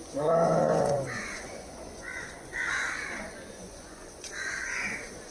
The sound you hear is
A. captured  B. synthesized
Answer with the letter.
B